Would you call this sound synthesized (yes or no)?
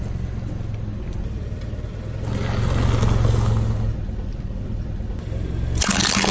no